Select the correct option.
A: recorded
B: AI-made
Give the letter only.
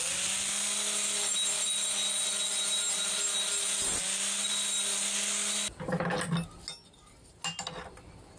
A